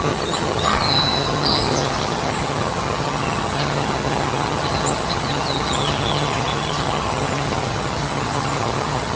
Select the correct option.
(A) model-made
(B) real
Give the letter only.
A